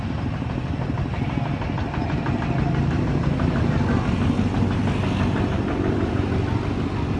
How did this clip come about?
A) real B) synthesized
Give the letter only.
A